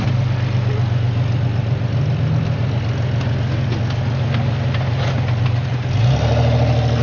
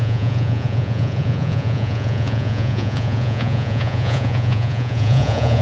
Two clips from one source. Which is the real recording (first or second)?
first